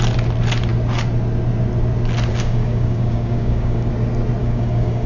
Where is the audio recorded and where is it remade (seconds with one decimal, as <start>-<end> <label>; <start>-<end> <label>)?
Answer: 0.0-2.3 recorded; 2.3-3.9 remade; 3.9-4.4 recorded; 4.4-5.1 remade